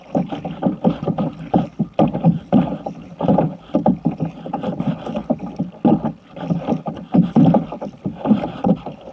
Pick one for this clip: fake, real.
real